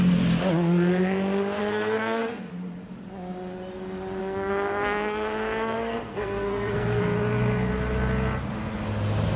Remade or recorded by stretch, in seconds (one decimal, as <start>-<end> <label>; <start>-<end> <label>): 0.0-1.6 recorded; 1.6-2.5 remade; 2.5-4.2 recorded; 4.2-7.0 remade; 7.0-9.4 recorded